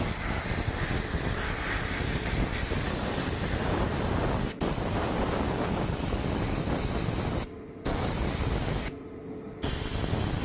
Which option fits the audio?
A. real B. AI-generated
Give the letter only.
A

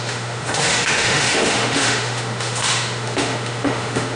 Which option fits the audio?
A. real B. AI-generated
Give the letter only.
B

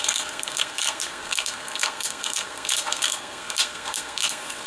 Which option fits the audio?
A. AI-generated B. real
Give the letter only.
A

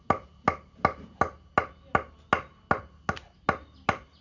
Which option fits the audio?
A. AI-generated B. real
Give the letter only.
B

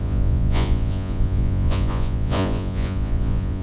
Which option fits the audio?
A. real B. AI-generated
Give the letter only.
B